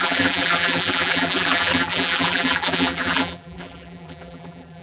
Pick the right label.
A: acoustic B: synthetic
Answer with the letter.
B